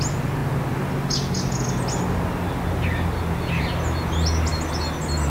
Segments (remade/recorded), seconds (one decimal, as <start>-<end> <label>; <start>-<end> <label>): 0.0-5.3 recorded